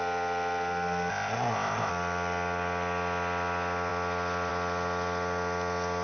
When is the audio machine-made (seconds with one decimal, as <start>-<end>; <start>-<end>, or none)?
1.1-1.9